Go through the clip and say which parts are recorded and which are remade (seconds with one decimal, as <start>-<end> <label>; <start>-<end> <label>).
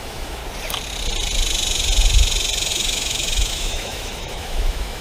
0.0-0.4 remade; 0.4-2.7 recorded; 2.7-5.0 remade